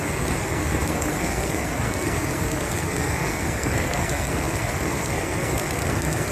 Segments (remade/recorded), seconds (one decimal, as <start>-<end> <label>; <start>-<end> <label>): 0.0-6.3 remade